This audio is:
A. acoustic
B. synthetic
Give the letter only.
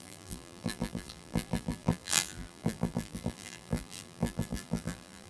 B